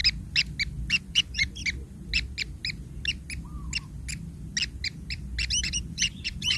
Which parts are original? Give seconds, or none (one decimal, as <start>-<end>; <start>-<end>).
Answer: 0.0-1.0; 1.6-5.6